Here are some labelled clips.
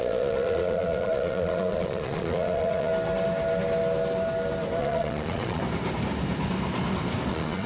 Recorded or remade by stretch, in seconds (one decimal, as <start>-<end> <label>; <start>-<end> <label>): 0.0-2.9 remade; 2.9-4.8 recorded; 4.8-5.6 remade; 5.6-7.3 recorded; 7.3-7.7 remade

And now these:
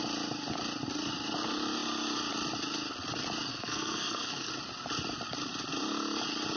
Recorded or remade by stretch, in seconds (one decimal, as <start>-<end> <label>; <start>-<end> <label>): 0.0-3.5 recorded; 3.5-4.5 remade; 4.5-6.6 recorded

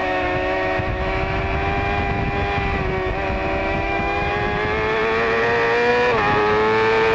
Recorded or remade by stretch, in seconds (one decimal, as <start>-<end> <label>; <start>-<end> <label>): 0.0-1.4 remade; 1.4-3.6 recorded; 3.6-4.3 remade; 4.3-7.1 recorded

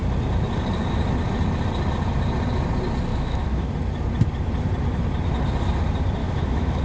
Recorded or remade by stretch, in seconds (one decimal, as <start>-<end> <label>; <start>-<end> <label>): 0.0-3.1 recorded; 3.1-3.7 remade; 3.7-6.2 recorded; 6.2-6.8 remade